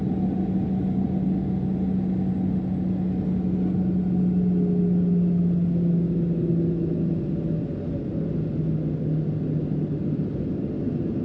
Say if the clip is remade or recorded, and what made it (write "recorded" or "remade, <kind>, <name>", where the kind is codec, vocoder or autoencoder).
recorded